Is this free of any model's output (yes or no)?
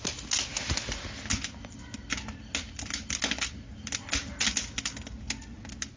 yes